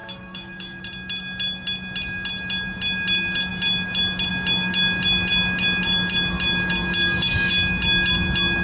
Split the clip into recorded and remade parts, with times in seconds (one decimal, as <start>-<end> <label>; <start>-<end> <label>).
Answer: 0.0-0.8 remade; 0.8-8.6 recorded